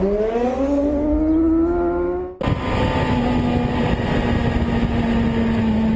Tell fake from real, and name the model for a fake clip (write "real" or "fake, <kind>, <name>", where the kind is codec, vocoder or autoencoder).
real